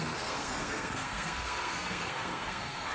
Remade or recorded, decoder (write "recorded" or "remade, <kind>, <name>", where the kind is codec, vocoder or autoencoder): remade, codec, SNAC